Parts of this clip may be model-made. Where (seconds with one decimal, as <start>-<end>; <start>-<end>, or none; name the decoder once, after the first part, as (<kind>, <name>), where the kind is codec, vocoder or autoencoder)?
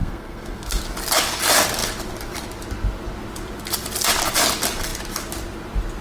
0.0-0.8 (codec, SNAC)